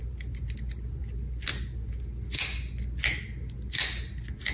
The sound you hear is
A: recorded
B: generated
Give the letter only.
A